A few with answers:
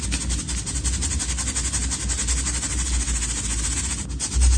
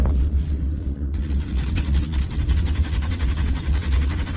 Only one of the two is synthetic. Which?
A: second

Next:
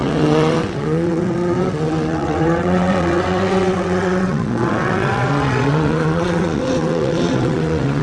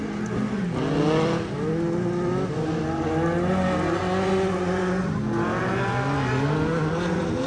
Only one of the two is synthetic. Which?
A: first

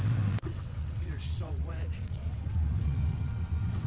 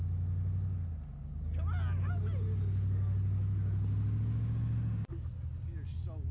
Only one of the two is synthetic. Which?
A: first